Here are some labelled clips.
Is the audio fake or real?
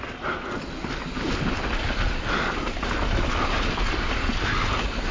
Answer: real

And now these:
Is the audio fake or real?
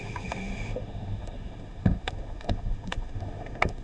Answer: fake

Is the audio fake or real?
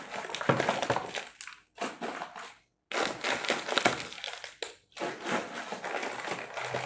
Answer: real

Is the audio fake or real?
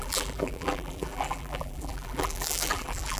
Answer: fake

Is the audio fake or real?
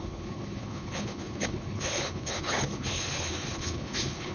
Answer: fake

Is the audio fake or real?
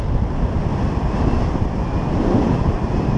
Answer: real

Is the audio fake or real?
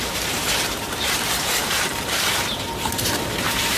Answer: fake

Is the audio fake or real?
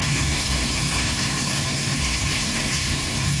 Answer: fake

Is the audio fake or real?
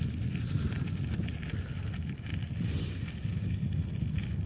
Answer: real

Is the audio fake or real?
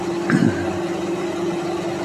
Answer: real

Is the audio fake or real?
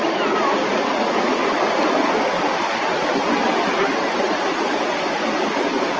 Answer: real